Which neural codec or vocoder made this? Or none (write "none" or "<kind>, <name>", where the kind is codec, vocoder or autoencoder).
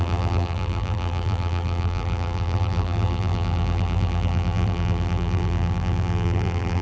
vocoder, BigVGAN v2